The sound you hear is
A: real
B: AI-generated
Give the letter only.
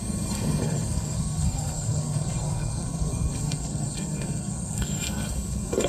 B